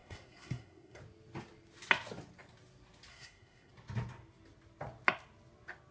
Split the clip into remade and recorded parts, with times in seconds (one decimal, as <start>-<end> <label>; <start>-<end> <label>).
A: 0.0-1.0 remade; 1.0-3.1 recorded; 3.1-3.7 remade; 3.7-5.9 recorded